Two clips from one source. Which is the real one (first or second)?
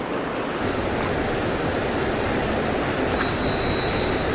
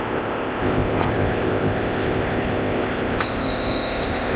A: first